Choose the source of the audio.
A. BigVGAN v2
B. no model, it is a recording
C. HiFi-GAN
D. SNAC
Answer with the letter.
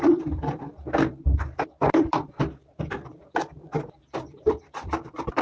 A